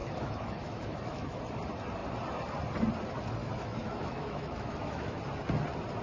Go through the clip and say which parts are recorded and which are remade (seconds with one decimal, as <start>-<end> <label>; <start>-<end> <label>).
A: 0.0-1.4 remade; 1.4-3.4 recorded; 3.4-5.2 remade; 5.2-6.0 recorded